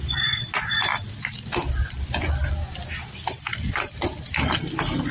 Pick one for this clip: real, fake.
real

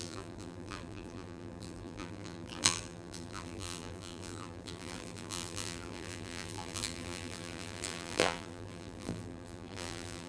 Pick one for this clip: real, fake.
fake